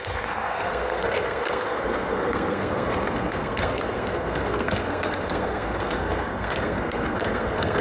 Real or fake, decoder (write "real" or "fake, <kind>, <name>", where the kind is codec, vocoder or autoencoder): fake, codec, SNAC